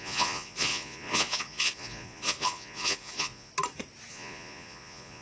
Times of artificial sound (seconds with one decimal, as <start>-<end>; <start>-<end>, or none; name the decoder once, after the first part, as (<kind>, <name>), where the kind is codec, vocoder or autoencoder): 0.0-3.5 (vocoder, Vocos); 4.1-5.2